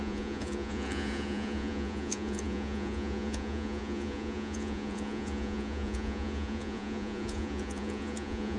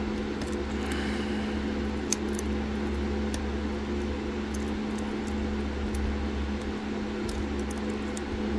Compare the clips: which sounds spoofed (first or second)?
first